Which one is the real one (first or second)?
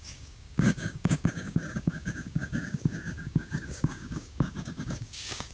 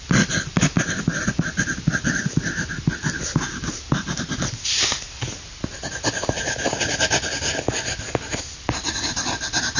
second